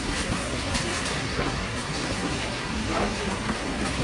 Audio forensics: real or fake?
fake